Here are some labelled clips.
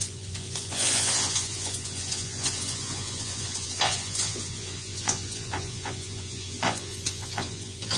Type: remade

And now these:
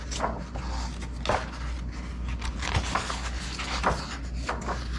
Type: recorded